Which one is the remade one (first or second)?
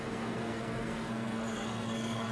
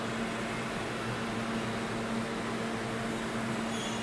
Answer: first